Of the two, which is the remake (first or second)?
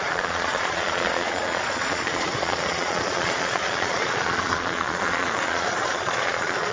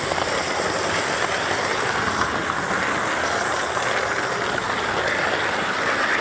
first